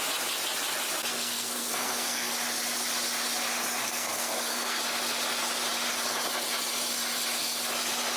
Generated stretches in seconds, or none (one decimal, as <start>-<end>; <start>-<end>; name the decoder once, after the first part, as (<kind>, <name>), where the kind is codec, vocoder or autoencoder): 1.1-2.3 (codec, SNAC); 3.8-4.8

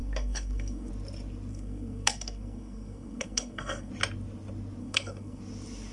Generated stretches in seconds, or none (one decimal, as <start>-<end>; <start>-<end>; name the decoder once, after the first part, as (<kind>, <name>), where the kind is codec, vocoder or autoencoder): 0.0-0.9 (codec, SNAC); 1.5-3.9; 4.8-5.4

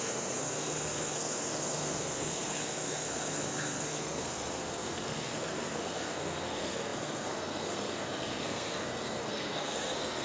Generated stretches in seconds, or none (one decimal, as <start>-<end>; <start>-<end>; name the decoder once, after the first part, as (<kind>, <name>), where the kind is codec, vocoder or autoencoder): 0.0-10.2 (codec, SNAC)

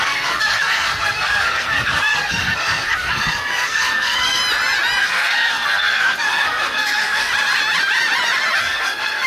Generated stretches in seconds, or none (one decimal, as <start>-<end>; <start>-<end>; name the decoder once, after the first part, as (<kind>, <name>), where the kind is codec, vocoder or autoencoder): 0.0-4.4 (codec, SNAC); 5.0-7.3; 8.6-9.3